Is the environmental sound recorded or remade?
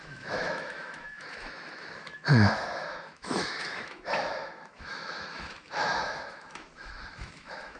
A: remade